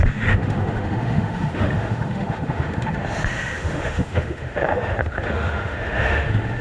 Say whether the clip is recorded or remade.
remade